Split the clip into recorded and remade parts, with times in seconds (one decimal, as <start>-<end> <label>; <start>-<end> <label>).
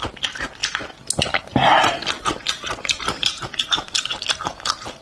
0.0-5.0 recorded